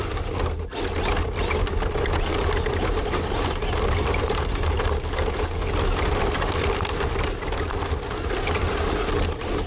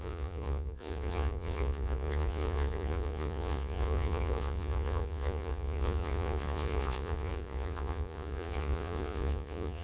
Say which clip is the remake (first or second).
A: second